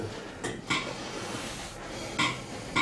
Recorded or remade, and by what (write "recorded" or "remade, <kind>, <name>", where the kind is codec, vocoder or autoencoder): recorded